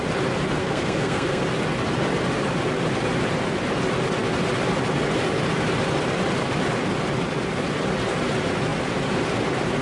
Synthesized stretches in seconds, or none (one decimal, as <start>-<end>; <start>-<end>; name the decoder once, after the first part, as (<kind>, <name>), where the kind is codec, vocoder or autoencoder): 0.6-1.4 (codec, SNAC)